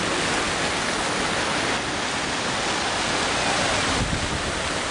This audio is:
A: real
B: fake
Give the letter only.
A